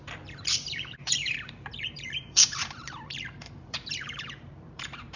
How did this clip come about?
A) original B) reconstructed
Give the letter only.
B